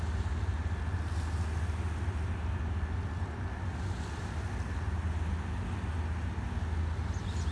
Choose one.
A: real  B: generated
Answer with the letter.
A